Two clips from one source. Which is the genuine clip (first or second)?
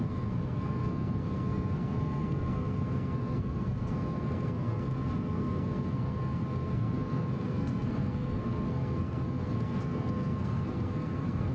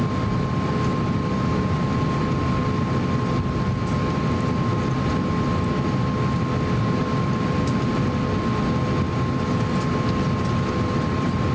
second